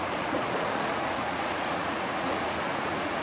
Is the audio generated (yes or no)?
yes